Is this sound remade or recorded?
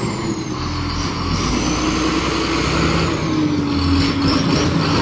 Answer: recorded